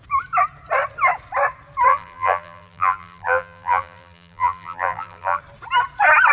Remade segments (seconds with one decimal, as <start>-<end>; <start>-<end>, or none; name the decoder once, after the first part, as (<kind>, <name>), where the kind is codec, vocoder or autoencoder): 1.9-5.4 (vocoder, BigVGAN v2)